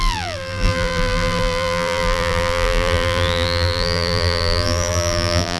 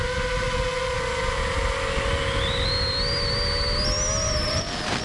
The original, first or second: second